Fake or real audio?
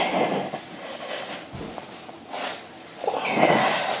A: real